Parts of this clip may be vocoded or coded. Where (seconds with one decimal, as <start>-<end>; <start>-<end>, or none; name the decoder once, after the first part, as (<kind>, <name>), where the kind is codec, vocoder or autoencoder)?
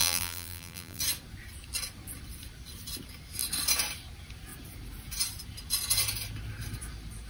0.0-1.0 (vocoder, BigVGAN v2)